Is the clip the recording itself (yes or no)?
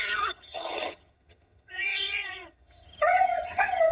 no